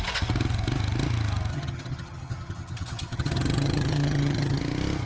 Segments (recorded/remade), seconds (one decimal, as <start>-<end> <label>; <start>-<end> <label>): 0.0-1.5 recorded; 1.5-4.6 remade; 4.6-5.1 recorded